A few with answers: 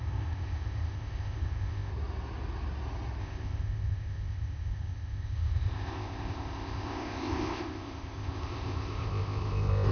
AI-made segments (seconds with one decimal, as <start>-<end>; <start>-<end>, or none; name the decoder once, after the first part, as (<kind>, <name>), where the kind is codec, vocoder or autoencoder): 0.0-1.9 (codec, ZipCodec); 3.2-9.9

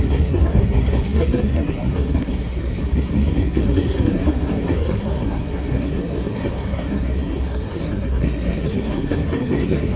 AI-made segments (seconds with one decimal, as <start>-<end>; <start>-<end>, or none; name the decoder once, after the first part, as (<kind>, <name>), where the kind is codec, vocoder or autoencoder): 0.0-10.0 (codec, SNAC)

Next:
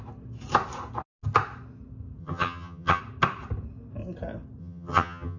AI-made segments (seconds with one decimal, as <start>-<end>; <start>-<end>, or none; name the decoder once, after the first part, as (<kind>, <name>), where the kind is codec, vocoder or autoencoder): 2.2-3.0 (vocoder, HiFi-GAN); 4.6-5.4

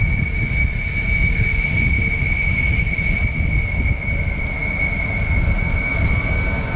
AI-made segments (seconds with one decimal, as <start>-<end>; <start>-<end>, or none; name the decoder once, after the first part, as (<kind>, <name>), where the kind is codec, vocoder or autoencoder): none